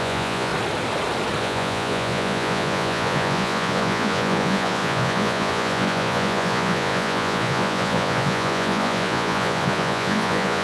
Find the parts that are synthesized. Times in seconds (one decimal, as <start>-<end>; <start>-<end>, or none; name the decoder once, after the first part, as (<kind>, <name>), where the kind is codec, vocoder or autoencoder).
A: 0.0-0.5 (vocoder, Vocos); 1.4-10.6